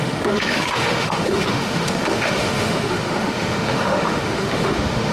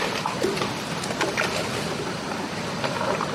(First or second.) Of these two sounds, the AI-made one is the first